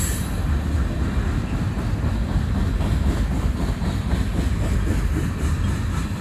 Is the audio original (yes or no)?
yes